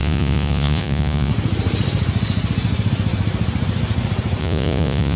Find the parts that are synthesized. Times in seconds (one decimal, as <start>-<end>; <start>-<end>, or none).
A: 0.0-1.3; 4.4-5.2